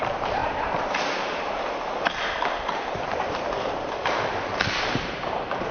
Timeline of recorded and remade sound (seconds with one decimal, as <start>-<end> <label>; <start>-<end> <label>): 0.0-5.7 remade